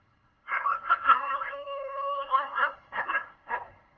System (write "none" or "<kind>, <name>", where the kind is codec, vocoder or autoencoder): codec, SNAC